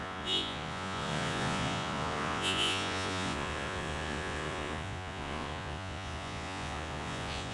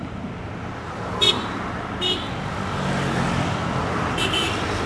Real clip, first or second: second